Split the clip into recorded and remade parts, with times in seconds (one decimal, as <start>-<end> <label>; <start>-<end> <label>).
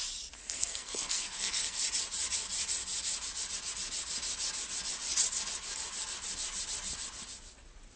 0.0-0.4 recorded; 0.4-1.8 remade; 1.8-8.0 recorded